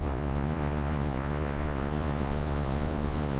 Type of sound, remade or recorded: remade